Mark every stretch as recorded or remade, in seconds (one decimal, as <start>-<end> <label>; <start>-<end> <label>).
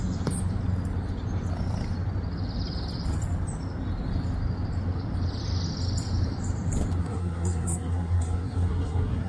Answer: 0.0-7.0 recorded; 7.0-9.3 remade